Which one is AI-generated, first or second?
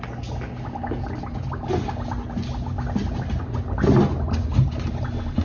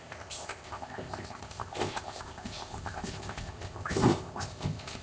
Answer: second